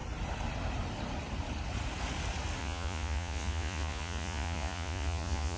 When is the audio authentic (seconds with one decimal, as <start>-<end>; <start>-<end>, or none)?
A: 0.0-2.6